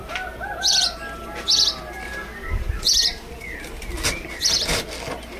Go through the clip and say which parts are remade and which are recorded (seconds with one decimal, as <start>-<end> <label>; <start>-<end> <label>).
0.0-5.4 recorded